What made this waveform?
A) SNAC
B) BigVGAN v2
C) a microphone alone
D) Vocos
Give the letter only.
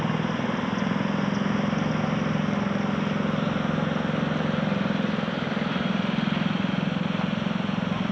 C